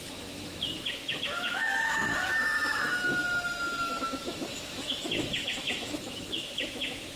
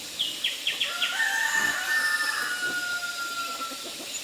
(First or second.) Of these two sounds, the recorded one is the second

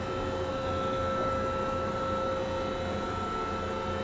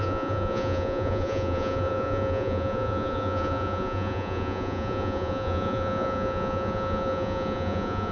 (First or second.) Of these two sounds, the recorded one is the first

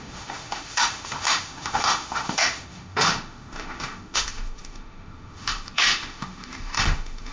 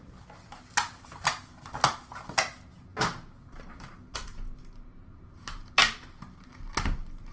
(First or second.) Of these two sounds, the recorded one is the second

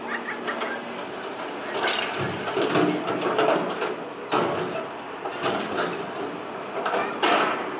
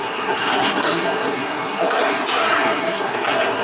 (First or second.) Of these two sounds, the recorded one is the first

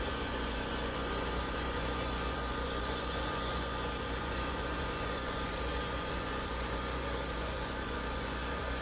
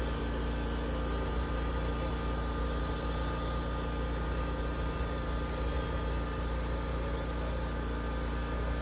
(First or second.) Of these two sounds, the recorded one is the second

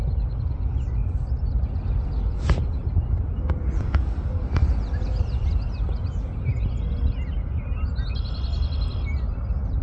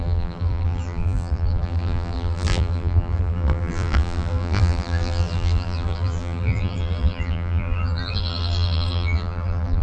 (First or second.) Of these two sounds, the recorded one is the first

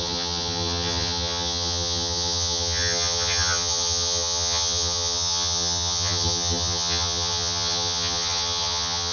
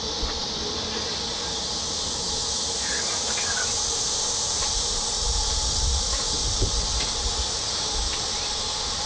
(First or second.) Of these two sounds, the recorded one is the second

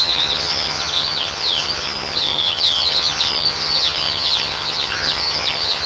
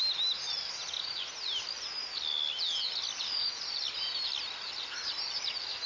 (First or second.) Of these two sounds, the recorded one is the second